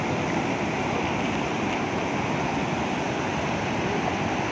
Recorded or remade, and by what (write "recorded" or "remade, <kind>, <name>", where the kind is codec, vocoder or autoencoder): recorded